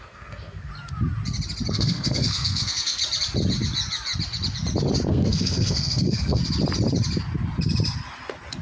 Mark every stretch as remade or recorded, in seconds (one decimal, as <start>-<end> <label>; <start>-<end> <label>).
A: 0.0-0.7 remade; 0.7-1.7 recorded; 1.7-3.0 remade; 3.0-5.1 recorded; 5.1-6.4 remade; 6.4-8.6 recorded